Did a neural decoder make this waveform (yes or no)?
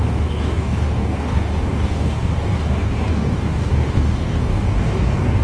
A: yes